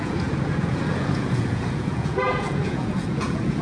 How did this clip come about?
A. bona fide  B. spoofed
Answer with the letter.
B